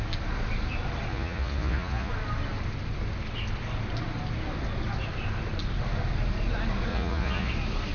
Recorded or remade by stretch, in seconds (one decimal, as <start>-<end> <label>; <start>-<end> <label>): 0.0-1.1 recorded; 1.1-2.1 remade; 2.1-6.9 recorded; 6.9-7.5 remade; 7.5-7.9 recorded